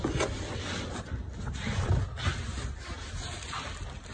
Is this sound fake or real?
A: real